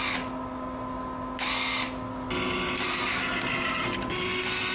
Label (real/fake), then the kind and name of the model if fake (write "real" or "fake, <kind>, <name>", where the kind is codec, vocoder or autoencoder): real